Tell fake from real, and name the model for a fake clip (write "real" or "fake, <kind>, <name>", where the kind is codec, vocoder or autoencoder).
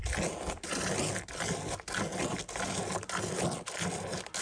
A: real